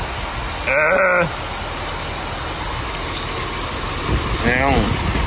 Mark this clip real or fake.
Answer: real